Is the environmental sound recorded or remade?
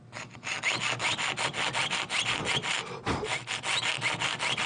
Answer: recorded